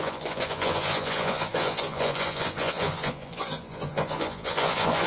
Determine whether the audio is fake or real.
fake